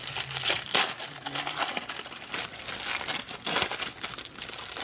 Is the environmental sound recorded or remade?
recorded